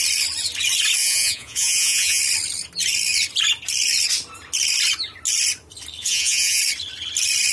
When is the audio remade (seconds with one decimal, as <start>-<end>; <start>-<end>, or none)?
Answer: 1.0-2.2; 6.0-6.6